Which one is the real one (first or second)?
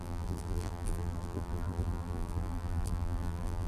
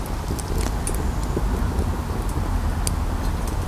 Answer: second